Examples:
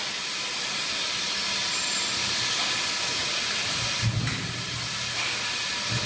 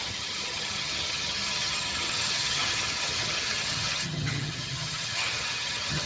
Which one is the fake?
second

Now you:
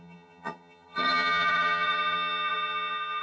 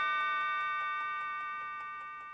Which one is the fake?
first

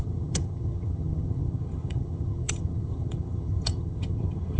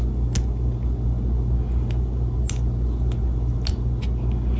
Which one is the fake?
first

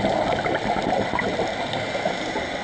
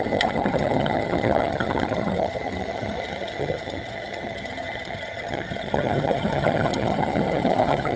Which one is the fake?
second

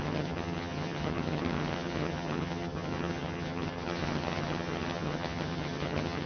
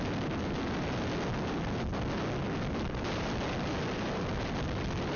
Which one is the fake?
first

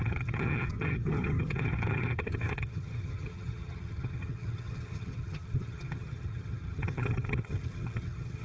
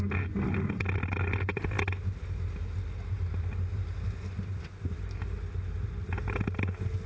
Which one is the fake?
first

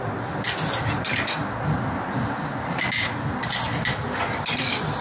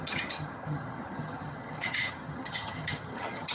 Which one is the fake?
second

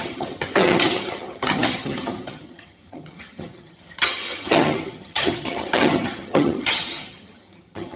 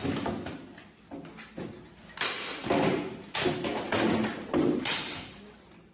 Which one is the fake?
first